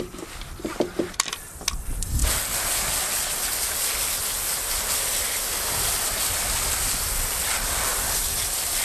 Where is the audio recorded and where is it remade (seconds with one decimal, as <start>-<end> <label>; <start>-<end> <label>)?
0.0-2.2 remade; 2.2-4.7 recorded; 4.7-8.8 remade